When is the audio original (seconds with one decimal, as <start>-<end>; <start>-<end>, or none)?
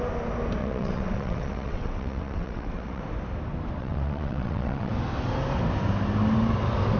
0.0-0.6; 3.0-3.8; 4.9-7.0